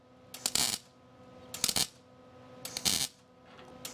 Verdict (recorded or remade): recorded